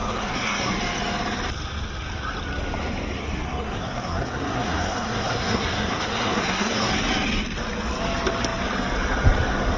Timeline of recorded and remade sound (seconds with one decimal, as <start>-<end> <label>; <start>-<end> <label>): 0.0-0.7 remade; 0.7-3.2 recorded; 3.2-6.9 remade; 6.9-9.8 recorded